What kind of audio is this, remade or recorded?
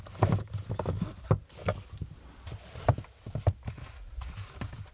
recorded